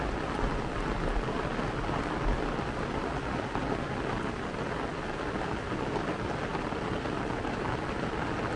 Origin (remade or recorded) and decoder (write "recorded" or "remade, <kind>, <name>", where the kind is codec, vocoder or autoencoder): recorded